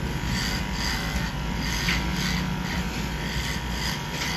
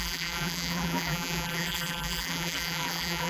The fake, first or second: second